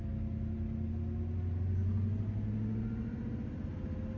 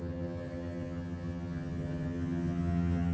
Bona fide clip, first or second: first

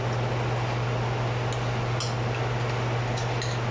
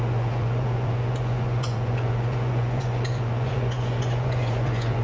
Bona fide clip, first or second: first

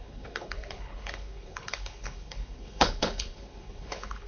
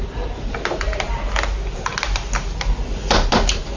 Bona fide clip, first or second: second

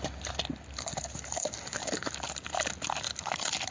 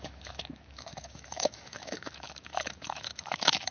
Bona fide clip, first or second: first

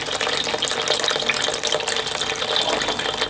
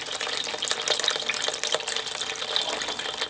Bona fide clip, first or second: first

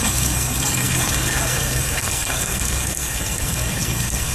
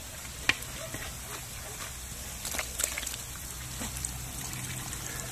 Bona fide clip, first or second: second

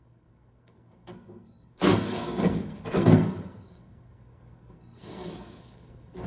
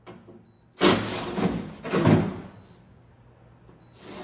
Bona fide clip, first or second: second